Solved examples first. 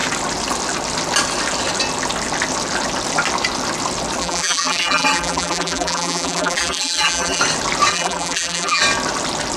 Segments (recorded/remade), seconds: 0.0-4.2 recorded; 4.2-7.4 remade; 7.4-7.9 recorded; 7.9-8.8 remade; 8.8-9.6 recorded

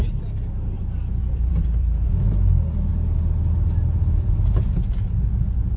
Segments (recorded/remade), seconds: 0.0-1.2 recorded; 1.2-2.1 remade; 2.1-5.8 recorded

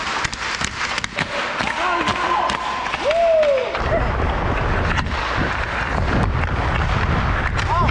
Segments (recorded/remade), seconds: 0.0-2.1 recorded; 2.1-2.9 remade; 2.9-3.6 recorded; 3.6-4.9 remade; 4.9-7.9 recorded

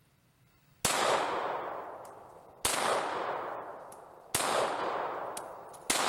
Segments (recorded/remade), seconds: 0.0-3.7 recorded; 3.7-4.3 remade; 4.3-6.1 recorded